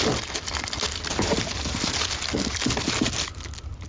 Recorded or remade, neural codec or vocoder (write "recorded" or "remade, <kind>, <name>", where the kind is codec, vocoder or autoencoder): recorded